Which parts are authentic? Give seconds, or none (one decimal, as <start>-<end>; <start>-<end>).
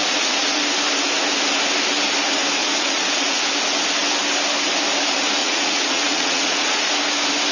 0.6-2.6; 3.5-5.4; 6.8-7.5